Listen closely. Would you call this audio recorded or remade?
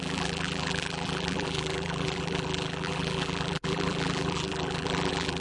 remade